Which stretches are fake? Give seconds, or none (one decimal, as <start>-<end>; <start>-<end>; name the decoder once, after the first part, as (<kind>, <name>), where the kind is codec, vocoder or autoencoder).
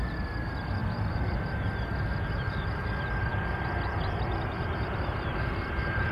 0.8-1.4 (vocoder, BigVGAN v2); 3.3-6.1